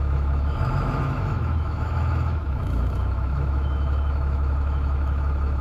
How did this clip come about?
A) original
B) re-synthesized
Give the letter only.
B